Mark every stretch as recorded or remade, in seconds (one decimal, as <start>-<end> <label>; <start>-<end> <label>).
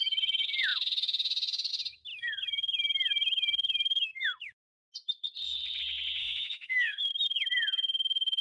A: 0.0-6.2 recorded; 6.2-7.0 remade; 7.0-8.4 recorded